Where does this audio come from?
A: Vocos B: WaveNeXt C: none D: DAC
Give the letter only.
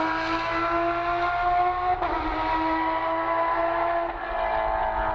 C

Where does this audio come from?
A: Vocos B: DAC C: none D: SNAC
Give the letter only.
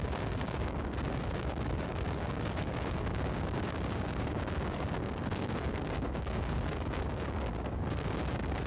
B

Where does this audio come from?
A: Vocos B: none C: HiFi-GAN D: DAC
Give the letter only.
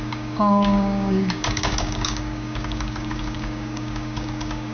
D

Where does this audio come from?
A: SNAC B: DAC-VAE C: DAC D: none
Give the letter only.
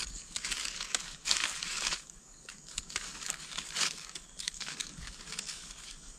C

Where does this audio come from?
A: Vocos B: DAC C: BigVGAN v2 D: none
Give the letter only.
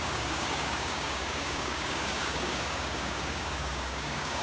B